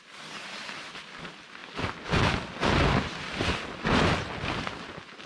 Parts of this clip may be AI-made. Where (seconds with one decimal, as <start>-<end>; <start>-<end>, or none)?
none